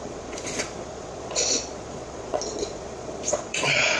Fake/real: fake